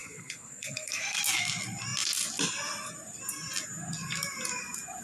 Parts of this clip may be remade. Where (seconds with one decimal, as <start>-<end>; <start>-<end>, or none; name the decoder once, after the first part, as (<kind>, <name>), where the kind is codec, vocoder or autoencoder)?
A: 0.0-1.2 (codec, SNAC)